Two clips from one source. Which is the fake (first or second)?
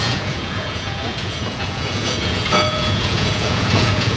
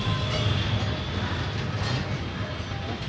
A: first